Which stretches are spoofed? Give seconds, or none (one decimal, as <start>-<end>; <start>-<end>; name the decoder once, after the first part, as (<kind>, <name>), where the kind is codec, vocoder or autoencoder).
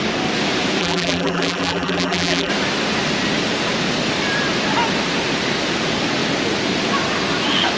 0.8-2.5 (vocoder, BigVGAN v2)